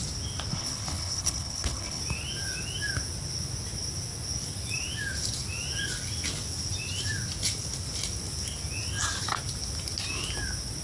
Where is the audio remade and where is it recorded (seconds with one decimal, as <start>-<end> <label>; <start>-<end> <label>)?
0.0-0.5 recorded; 0.5-2.0 remade; 2.0-10.8 recorded